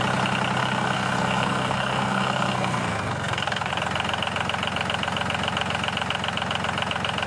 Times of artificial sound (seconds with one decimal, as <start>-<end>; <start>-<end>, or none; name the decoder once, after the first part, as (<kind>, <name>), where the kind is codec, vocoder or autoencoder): 0.6-3.7 (codec, SNAC)